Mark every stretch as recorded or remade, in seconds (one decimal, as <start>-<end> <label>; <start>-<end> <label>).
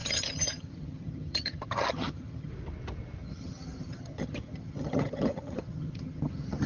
0.0-2.5 remade; 2.5-3.2 recorded; 3.2-6.7 remade